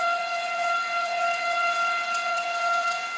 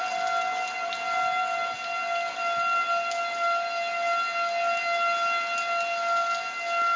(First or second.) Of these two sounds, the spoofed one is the first